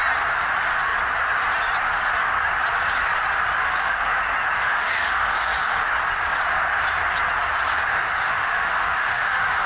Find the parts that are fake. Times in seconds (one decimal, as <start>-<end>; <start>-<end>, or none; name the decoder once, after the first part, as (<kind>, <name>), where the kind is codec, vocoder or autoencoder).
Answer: 3.6-4.1 (autoencoder, DAC-VAE); 4.6-5.9; 7.9-9.7